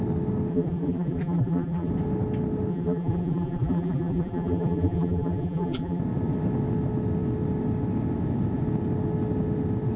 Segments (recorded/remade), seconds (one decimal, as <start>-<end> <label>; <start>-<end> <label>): 0.0-0.5 recorded; 0.5-1.9 remade; 1.9-2.7 recorded; 2.7-6.0 remade; 6.0-10.0 recorded